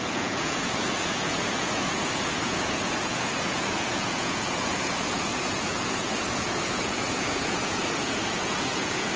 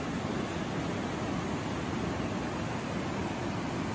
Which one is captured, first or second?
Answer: second